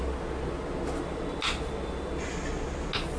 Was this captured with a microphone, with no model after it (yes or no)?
yes